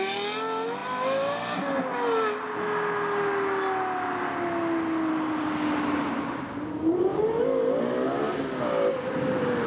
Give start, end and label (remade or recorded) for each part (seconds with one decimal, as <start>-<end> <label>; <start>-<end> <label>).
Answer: 0.0-9.7 recorded